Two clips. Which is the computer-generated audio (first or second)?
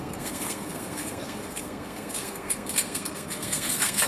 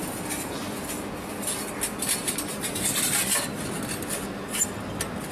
first